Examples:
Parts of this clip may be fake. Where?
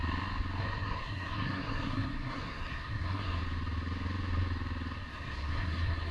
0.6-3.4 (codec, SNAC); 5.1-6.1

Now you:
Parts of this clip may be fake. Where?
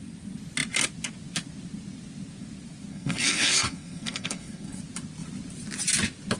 2.9-4.8 (codec, SNAC)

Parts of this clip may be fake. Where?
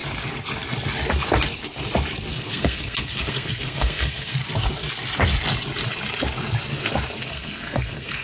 2.3-4.4 (codec, SNAC); 7.2-8.2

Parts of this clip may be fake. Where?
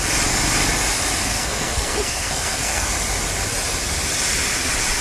1.2-2.9 (codec, SNAC)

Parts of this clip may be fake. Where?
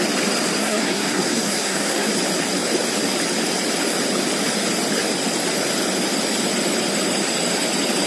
0.6-2.1 (codec, SNAC)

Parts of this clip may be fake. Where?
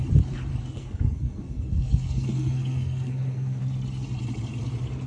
0.5-3.6 (codec, SNAC)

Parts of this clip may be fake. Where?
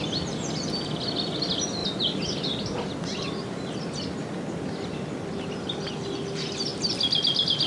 none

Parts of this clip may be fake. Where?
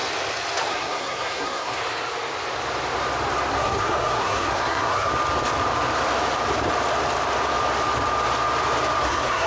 0.7-1.8 (codec, SNAC); 3.5-5.1; 9.0-9.5